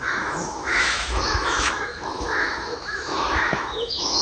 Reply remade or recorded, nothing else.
remade